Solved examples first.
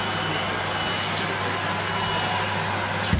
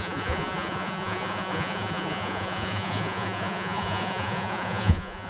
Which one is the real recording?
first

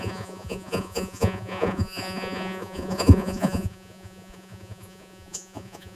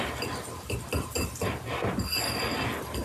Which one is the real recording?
second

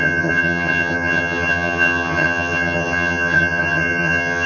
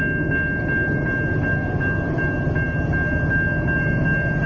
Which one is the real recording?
second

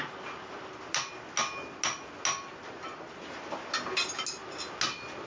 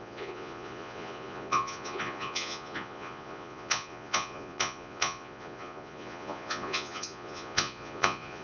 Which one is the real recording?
first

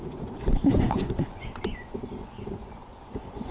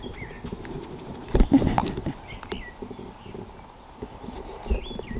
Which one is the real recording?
second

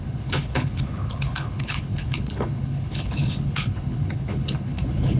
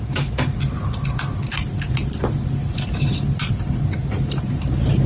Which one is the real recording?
second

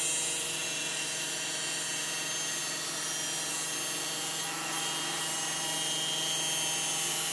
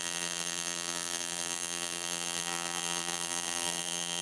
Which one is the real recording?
first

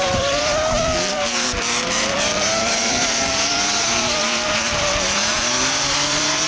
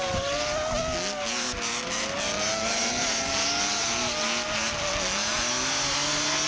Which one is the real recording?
second